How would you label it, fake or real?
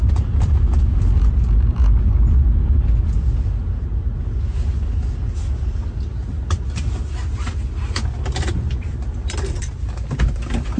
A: real